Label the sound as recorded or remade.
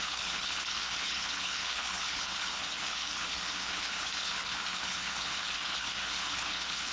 remade